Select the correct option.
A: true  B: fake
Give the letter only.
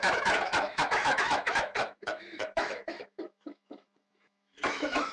B